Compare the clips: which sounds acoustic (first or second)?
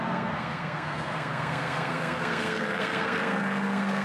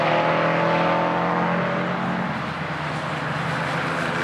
second